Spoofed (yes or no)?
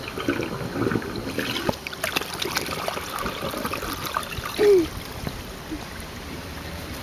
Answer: yes